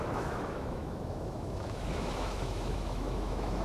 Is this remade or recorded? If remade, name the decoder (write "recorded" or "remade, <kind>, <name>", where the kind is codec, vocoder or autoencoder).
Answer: remade, autoencoder, DAC-VAE